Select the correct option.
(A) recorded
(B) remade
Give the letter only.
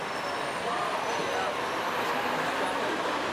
A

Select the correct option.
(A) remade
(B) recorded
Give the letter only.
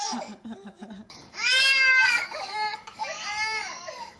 A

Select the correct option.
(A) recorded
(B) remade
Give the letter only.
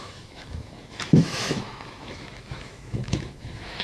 B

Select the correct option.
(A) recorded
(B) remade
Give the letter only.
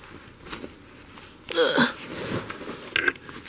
A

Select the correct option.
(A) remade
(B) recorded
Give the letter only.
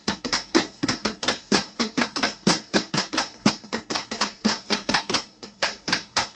A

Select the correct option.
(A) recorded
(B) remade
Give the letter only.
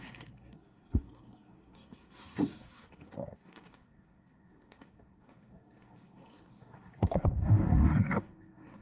B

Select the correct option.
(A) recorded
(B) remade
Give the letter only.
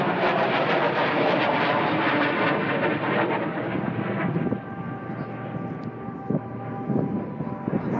A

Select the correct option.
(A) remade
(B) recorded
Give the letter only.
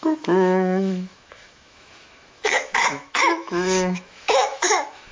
A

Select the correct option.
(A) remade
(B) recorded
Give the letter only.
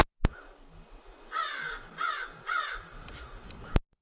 B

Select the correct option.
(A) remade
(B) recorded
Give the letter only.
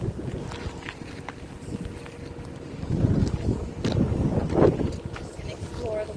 B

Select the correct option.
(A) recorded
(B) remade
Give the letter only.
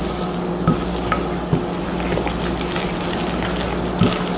A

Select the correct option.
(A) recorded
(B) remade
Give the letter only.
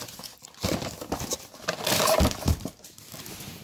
A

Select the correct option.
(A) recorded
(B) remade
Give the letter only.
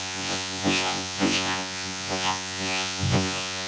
B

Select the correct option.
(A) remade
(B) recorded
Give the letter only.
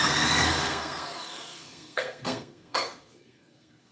A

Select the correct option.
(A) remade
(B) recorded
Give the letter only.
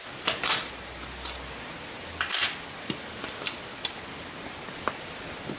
B